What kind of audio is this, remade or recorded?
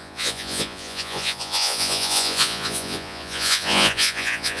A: remade